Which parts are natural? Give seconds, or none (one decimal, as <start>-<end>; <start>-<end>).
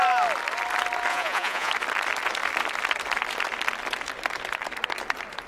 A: 0.0-1.1; 1.7-5.5